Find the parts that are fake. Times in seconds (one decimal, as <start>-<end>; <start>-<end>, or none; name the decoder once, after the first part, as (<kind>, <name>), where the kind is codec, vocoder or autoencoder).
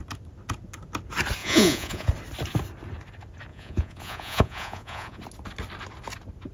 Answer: 1.4-2.1 (vocoder, Vocos); 3.5-5.2